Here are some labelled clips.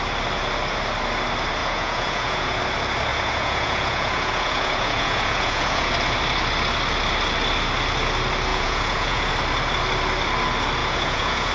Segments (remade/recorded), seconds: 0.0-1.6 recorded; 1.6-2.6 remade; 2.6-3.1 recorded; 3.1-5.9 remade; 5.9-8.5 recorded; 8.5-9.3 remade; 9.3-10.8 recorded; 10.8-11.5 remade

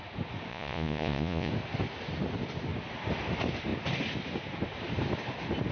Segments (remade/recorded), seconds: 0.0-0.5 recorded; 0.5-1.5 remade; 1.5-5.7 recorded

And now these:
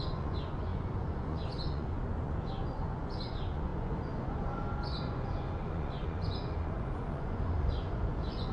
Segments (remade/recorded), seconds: 0.0-8.5 remade

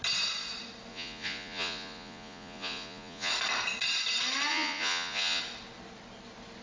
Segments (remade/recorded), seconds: 0.0-0.9 recorded; 0.9-3.3 remade; 3.3-4.5 recorded; 4.5-5.4 remade; 5.4-6.6 recorded

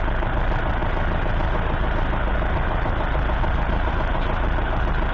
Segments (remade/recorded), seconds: 0.0-5.1 recorded

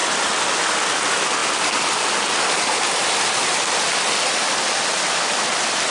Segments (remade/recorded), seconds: 0.0-5.9 recorded

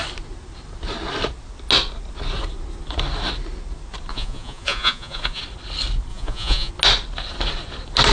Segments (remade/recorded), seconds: 0.0-4.1 recorded; 4.1-5.4 remade; 5.4-6.1 recorded; 6.1-6.7 remade; 6.7-8.1 recorded